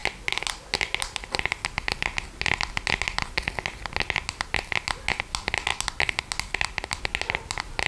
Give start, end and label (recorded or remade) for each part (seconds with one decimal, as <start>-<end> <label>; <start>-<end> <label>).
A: 0.0-7.9 recorded